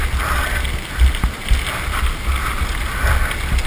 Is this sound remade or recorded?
recorded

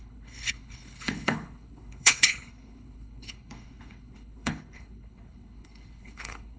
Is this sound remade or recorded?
remade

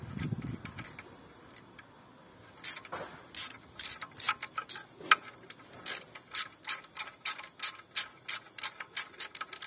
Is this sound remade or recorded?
recorded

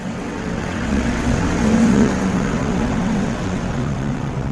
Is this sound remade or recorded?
remade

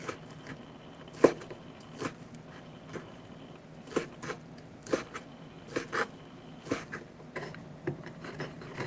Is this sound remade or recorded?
recorded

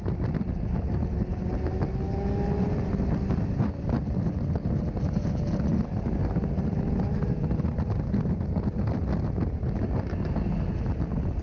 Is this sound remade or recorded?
recorded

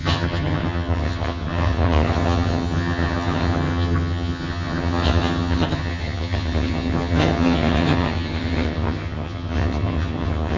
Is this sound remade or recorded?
remade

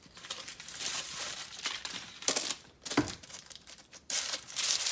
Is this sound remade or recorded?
remade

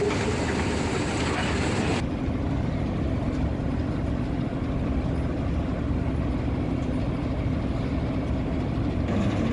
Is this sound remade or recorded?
recorded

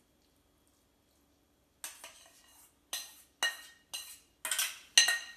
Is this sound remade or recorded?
recorded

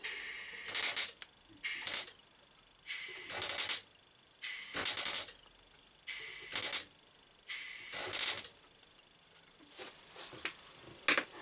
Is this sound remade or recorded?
recorded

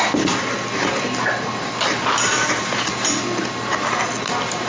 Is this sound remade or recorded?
recorded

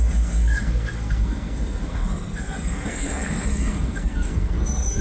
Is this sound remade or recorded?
remade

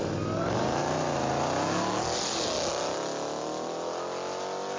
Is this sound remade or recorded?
recorded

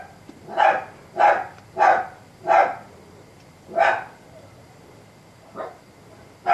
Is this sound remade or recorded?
recorded